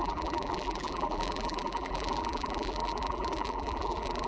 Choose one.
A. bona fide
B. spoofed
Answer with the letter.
B